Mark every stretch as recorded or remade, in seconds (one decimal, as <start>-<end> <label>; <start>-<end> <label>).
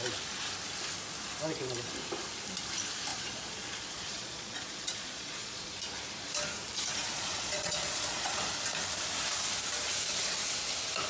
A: 0.0-3.1 recorded; 3.1-5.7 remade; 5.7-7.0 recorded; 7.0-8.5 remade; 8.5-11.1 recorded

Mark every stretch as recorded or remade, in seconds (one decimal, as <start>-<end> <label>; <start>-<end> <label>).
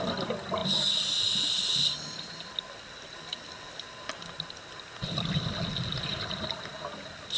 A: 0.0-7.4 recorded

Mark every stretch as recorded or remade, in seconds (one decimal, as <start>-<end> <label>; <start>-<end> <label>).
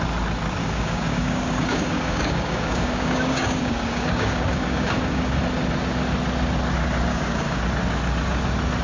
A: 0.0-0.6 recorded; 0.6-5.4 remade; 5.4-7.1 recorded; 7.1-7.6 remade; 7.6-8.8 recorded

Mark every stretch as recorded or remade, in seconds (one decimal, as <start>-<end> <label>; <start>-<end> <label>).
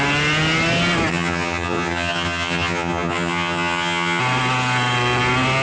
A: 0.0-1.1 recorded; 1.1-4.2 remade; 4.2-5.6 recorded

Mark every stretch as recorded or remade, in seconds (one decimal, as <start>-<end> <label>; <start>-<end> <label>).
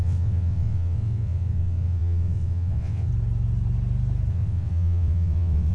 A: 0.0-3.1 remade; 3.1-4.3 recorded; 4.3-5.7 remade